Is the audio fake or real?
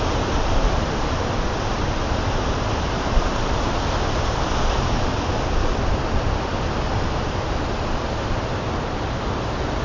real